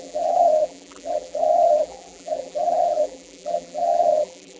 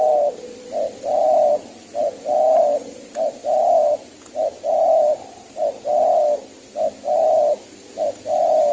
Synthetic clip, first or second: first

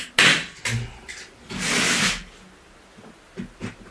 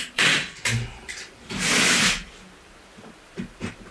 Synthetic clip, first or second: second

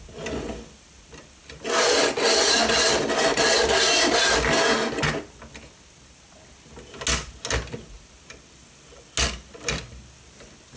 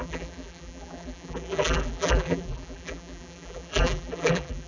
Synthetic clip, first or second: second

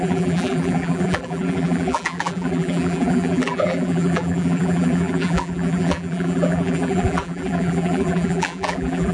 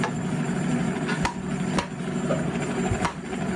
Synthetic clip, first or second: first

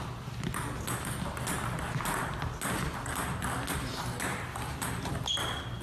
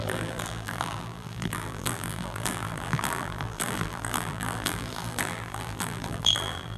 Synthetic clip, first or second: second